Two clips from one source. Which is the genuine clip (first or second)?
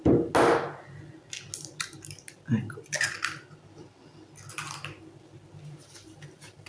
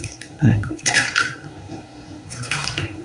first